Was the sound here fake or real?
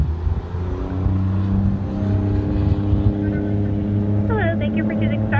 real